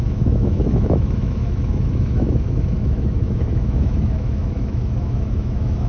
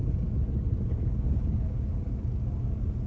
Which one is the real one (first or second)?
second